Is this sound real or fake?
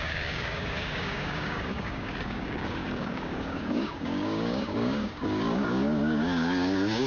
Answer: fake